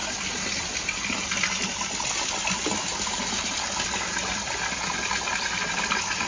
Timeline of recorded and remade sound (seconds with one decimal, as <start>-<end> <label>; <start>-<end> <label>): 0.0-6.3 recorded